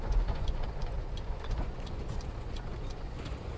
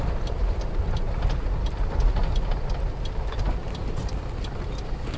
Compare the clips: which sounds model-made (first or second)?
first